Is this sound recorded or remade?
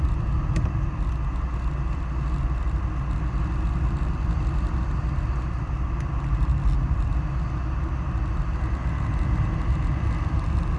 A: recorded